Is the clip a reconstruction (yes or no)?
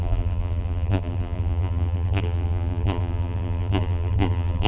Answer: yes